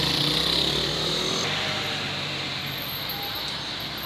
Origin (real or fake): real